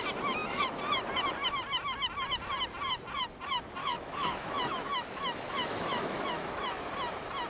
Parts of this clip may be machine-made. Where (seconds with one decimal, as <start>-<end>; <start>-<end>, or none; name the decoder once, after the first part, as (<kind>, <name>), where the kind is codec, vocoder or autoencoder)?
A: 3.8-6.7 (autoencoder, DAC-VAE)